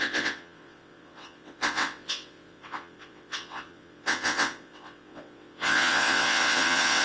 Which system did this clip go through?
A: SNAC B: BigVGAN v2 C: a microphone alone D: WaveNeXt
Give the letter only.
D